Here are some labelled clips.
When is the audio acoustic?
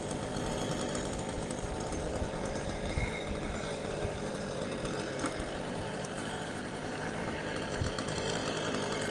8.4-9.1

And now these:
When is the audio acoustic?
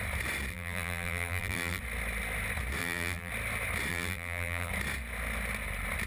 0.0-0.5; 1.8-2.8; 3.3-3.9; 4.7-6.1